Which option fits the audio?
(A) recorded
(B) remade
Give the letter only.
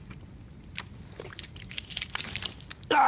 B